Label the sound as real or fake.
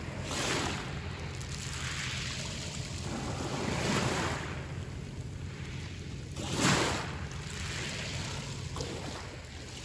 real